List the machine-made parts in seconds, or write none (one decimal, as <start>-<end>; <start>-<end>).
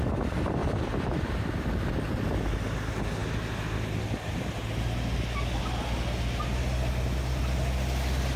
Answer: none